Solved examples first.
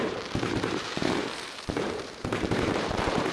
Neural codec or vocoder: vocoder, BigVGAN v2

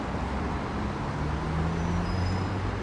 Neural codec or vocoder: none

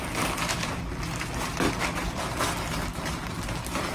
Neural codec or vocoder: none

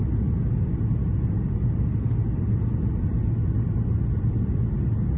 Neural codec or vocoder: none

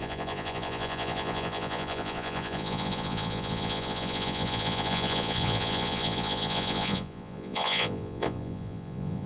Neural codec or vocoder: vocoder, Vocos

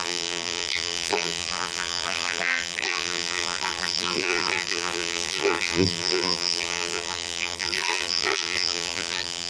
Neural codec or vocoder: vocoder, BigVGAN v2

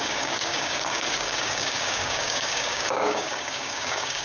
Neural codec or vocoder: codec, DAC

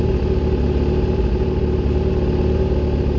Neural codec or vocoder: none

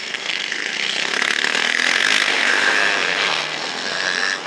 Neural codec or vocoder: codec, SNAC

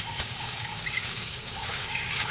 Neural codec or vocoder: codec, DAC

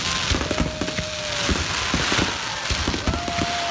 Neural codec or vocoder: none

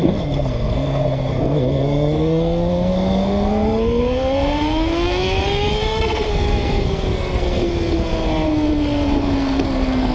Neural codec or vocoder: codec, SNAC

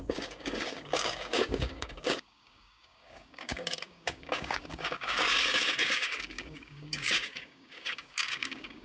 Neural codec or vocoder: codec, DAC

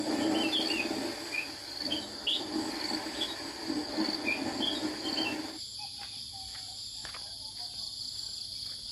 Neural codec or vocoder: none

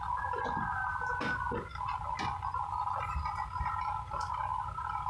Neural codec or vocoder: none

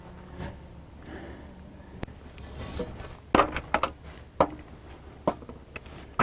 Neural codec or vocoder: none